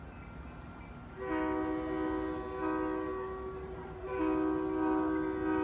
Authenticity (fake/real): real